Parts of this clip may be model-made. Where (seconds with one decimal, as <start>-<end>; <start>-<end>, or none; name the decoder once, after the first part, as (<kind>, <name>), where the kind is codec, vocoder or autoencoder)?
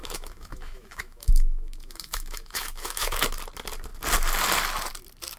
0.0-3.2 (autoencoder, DAC-VAE)